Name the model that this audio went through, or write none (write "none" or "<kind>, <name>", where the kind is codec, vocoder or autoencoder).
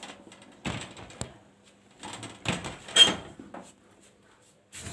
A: none